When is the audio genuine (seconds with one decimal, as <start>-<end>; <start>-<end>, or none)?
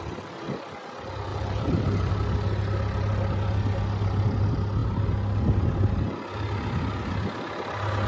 0.0-1.3; 2.1-8.1